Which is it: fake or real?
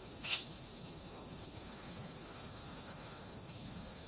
fake